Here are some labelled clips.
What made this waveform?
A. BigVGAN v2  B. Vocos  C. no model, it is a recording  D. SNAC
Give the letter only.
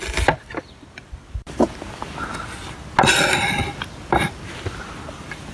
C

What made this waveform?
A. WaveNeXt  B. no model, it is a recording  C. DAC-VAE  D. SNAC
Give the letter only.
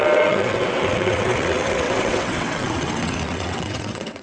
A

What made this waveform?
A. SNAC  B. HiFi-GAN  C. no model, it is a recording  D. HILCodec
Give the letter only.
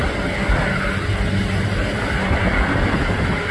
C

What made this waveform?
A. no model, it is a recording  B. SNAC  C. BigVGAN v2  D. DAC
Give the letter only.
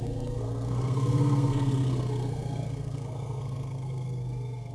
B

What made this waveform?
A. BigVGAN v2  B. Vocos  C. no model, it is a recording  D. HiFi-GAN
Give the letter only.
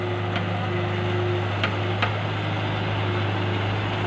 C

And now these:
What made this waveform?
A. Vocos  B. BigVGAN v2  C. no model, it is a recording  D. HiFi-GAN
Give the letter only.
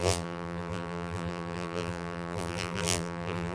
B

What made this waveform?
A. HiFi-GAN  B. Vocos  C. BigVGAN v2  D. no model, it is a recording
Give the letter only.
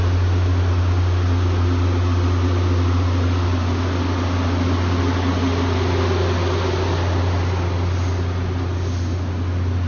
D